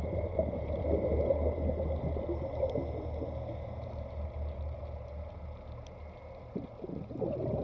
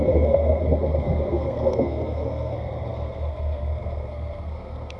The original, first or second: first